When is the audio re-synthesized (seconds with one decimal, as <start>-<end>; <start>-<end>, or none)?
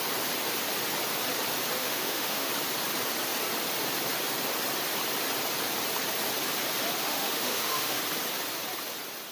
1.8-2.5; 7.0-8.0